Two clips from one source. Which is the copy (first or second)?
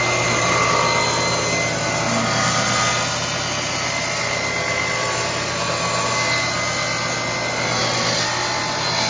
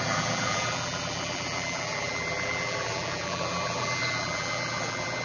second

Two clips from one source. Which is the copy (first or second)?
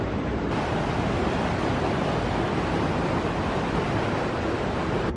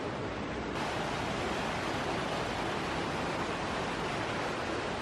first